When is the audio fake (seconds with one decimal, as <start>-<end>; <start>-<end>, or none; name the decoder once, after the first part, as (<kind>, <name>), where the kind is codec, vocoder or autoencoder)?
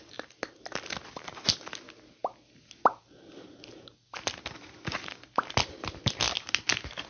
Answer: none